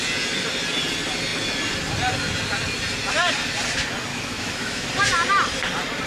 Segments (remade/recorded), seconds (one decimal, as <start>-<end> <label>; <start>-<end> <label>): 0.0-4.1 recorded; 4.1-4.9 remade; 4.9-6.1 recorded